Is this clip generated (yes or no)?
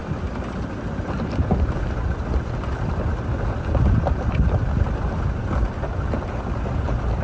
no